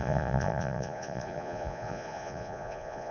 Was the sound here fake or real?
fake